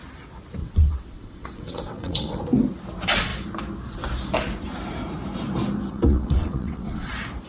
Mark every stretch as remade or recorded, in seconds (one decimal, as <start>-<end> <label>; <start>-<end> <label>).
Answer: 0.0-0.6 recorded; 0.6-2.4 remade; 2.4-5.9 recorded; 5.9-7.1 remade; 7.1-7.5 recorded